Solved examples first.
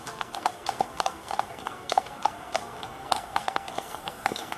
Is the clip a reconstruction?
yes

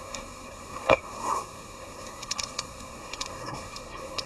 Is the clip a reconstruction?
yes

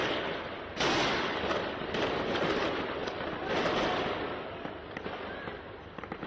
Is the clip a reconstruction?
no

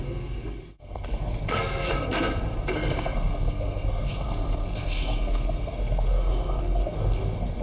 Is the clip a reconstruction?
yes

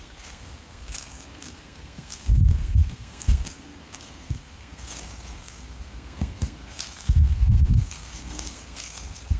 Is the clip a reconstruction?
yes